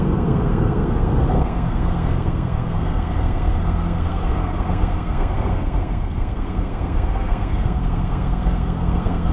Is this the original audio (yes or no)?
no